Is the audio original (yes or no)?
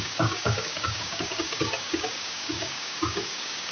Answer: no